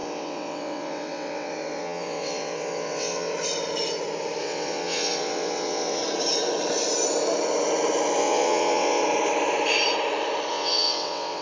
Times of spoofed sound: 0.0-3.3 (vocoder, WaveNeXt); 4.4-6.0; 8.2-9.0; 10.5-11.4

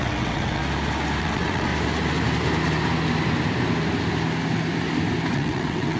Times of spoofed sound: 0.0-0.6 (vocoder, WaveNeXt); 1.2-1.7; 5.3-6.0